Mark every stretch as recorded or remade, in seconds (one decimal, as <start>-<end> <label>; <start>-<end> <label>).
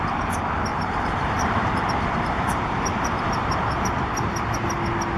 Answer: 0.0-0.7 recorded; 0.7-3.8 remade; 3.8-5.2 recorded